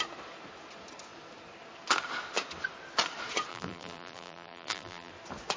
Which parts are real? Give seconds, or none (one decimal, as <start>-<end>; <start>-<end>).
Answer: 0.0-3.5; 5.1-5.6

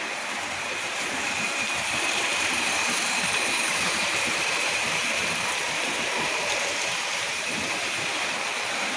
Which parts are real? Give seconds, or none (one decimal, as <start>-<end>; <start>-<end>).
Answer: none

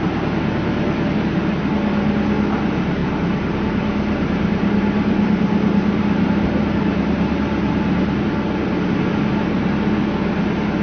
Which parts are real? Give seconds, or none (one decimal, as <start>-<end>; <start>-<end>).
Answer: 0.0-3.0; 8.2-10.8

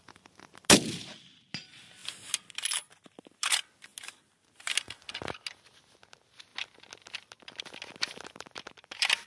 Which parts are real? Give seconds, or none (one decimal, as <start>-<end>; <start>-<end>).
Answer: 0.0-9.3